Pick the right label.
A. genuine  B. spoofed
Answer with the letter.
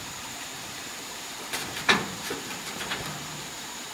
B